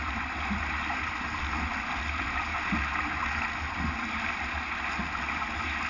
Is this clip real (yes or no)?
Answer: yes